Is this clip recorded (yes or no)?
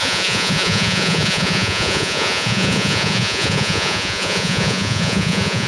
no